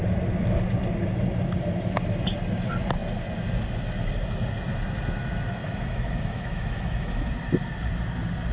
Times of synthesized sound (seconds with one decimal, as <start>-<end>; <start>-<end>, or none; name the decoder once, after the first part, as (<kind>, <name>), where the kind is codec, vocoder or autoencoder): 5.6-7.3 (autoencoder, DAC-VAE)

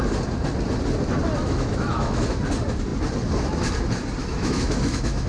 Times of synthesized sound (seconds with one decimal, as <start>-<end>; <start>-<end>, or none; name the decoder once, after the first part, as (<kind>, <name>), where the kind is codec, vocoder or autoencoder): 1.4-2.4 (autoencoder, DAC-VAE); 4.2-5.3

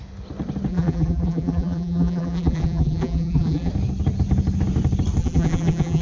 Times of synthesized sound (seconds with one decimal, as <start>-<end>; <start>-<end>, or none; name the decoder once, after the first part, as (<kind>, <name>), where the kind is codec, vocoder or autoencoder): 0.7-3.7 (vocoder, BigVGAN v2); 5.2-6.0

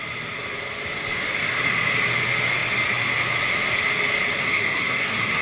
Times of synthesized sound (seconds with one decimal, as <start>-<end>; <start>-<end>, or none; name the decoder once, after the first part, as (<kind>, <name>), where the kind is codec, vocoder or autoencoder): 4.4-5.4 (codec, SNAC)

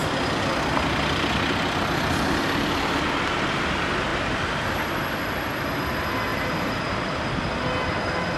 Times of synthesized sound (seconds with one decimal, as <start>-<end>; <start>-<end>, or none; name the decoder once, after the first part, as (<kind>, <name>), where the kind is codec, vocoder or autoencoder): 6.3-7.2 (vocoder, BigVGAN v2)

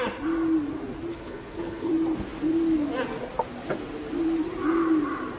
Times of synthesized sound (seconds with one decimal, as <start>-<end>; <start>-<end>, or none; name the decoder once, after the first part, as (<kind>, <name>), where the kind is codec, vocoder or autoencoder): 1.1-1.9 (codec, HILCodec)

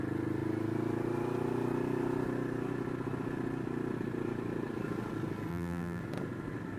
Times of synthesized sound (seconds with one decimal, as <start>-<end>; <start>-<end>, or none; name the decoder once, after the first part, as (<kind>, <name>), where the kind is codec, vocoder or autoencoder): 5.5-6.0 (vocoder, BigVGAN v2)